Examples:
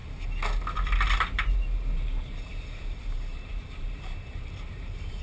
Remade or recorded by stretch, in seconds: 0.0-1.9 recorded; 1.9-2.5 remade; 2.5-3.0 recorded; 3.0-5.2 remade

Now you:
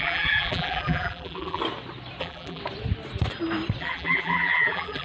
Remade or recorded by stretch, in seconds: 0.0-1.6 remade; 1.6-2.2 recorded; 2.2-2.6 remade; 2.6-3.8 recorded; 3.8-5.0 remade

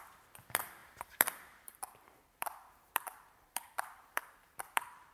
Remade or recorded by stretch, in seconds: 0.0-5.1 remade